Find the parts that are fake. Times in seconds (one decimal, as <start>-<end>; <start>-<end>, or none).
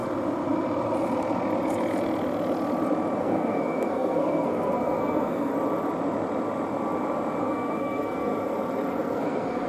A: 3.2-5.5; 7.4-8.3; 8.9-9.7